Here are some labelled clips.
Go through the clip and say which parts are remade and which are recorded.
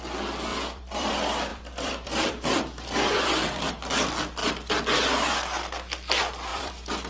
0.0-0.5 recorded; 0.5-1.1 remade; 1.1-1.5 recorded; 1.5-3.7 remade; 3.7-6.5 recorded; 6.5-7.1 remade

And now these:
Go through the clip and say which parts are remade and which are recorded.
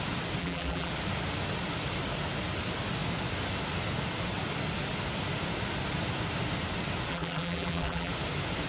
0.0-0.4 recorded; 0.4-0.9 remade; 0.9-7.1 recorded; 7.1-8.1 remade; 8.1-8.7 recorded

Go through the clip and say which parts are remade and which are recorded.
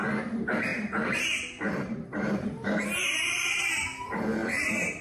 0.0-0.7 recorded; 0.7-3.7 remade; 3.7-4.4 recorded; 4.4-5.0 remade